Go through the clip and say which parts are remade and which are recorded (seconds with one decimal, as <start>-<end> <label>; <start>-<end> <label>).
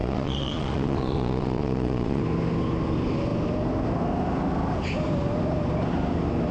0.0-2.2 remade; 2.2-6.5 recorded